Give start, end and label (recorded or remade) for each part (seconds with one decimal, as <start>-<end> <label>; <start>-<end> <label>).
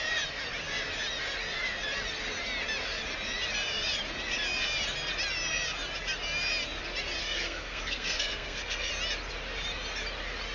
0.0-7.2 recorded; 7.2-8.9 remade; 8.9-10.5 recorded